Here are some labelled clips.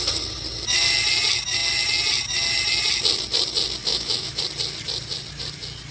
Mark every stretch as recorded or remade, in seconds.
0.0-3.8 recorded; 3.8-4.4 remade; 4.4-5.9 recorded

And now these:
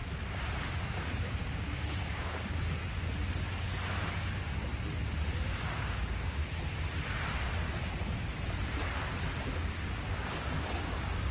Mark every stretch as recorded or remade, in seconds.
0.0-0.7 recorded; 0.7-2.8 remade; 2.8-4.2 recorded; 4.2-4.7 remade; 4.7-5.4 recorded; 5.4-6.4 remade; 6.4-9.8 recorded; 9.8-11.3 remade

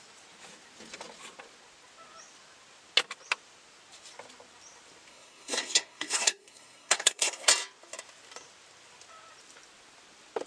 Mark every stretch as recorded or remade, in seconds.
0.0-5.1 recorded; 5.1-7.5 remade; 7.5-10.5 recorded

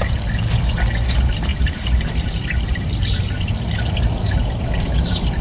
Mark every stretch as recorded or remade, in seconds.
0.0-1.5 recorded; 1.5-3.5 remade; 3.5-5.4 recorded

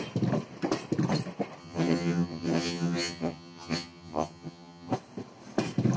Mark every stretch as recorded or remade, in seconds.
0.0-1.6 recorded; 1.6-4.9 remade; 4.9-6.0 recorded

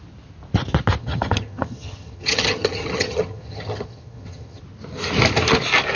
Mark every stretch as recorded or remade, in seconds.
0.0-1.0 recorded; 1.0-4.6 remade; 4.6-6.0 recorded